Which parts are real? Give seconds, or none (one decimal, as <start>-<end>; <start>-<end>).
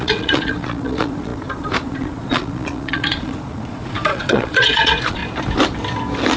5.2-6.4